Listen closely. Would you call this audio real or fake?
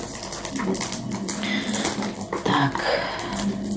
real